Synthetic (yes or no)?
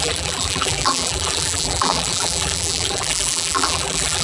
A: yes